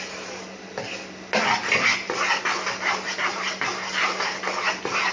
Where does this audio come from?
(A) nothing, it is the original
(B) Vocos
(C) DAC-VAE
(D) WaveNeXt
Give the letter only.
A